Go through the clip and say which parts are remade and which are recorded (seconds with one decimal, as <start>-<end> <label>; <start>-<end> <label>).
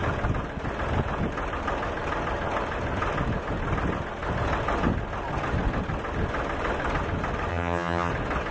0.0-7.5 recorded; 7.5-8.1 remade; 8.1-8.5 recorded